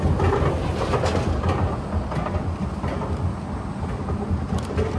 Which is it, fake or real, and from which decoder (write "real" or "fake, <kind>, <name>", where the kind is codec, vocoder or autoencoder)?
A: real